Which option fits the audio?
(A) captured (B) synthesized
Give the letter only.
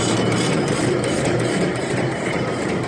B